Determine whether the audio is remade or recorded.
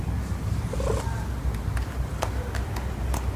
recorded